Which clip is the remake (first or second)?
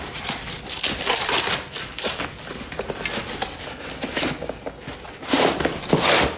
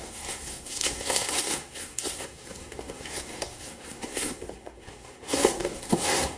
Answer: second